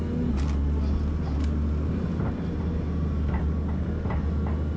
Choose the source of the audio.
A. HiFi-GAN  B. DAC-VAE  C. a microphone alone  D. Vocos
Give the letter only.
C